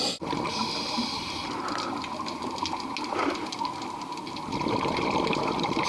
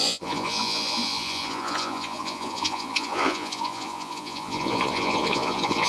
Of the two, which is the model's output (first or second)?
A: second